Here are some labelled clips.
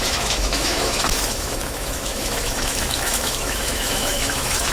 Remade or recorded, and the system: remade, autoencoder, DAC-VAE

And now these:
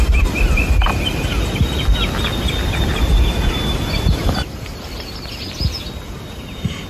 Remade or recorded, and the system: recorded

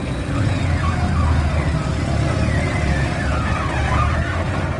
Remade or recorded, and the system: recorded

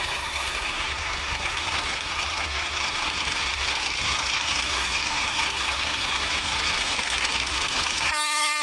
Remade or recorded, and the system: remade, codec, SNAC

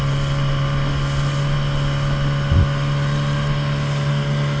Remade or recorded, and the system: recorded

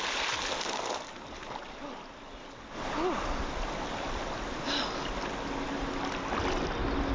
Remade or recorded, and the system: recorded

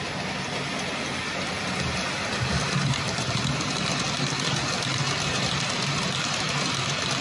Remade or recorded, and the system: recorded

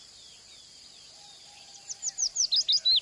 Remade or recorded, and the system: recorded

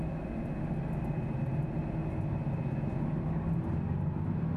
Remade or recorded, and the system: recorded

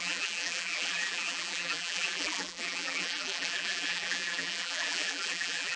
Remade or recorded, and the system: remade, vocoder, BigVGAN v2